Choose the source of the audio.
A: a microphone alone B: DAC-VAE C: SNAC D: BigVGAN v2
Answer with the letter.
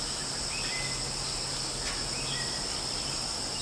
A